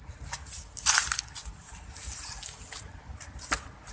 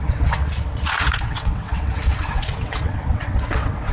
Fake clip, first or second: second